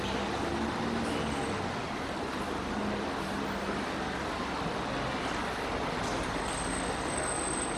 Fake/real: real